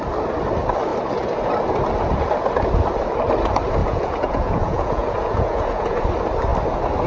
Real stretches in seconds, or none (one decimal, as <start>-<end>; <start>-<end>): 0.0-3.8; 6.0-7.1